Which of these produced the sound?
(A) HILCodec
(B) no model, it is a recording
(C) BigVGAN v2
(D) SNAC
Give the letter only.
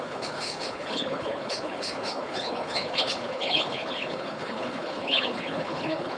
A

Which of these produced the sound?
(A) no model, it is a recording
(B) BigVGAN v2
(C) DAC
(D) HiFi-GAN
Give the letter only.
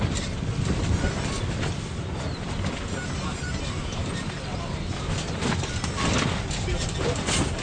A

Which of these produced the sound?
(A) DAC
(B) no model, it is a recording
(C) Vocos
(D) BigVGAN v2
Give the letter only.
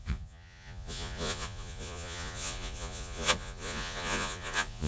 C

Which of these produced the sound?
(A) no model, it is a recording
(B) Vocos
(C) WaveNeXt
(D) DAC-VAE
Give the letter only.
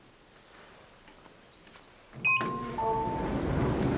A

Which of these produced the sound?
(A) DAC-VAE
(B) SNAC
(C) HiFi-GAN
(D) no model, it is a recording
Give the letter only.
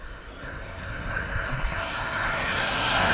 B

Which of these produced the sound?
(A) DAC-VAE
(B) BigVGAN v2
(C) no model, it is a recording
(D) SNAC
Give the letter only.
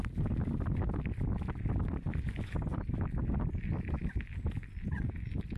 C